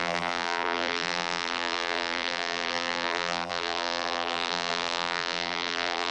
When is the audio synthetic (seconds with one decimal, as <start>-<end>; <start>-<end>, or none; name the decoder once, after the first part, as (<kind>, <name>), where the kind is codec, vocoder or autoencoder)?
0.0-6.1 (vocoder, BigVGAN v2)